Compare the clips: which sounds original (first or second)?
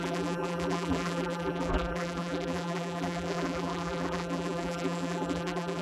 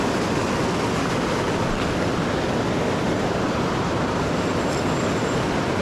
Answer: second